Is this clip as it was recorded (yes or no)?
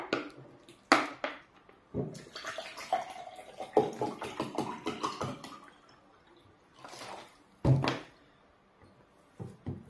yes